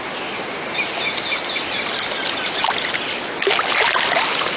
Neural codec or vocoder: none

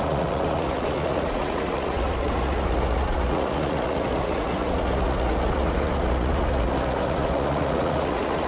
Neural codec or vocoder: vocoder, Vocos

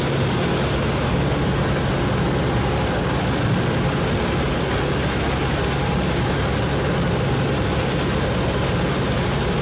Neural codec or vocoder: none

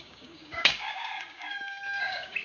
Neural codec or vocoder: codec, DAC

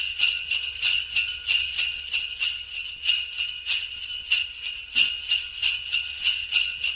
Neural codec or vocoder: none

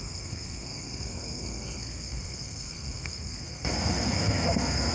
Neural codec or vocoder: codec, SNAC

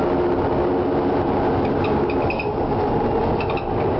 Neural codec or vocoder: none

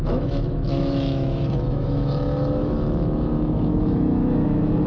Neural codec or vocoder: autoencoder, DAC-VAE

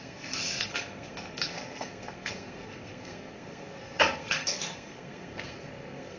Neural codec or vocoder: codec, SNAC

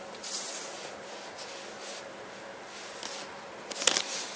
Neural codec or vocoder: none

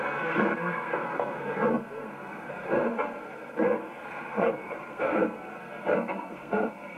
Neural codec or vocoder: codec, SNAC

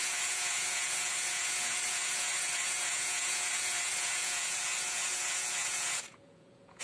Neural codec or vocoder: vocoder, Vocos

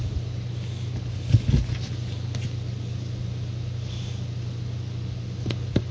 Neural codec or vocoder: none